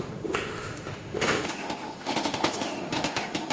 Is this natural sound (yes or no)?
no